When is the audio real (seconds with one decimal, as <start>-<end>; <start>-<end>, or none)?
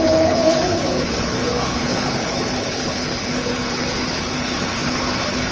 none